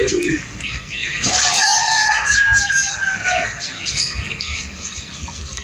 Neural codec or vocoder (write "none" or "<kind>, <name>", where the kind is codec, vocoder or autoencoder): codec, SNAC